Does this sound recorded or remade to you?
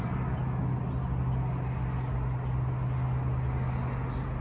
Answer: recorded